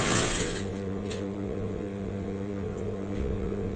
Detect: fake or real fake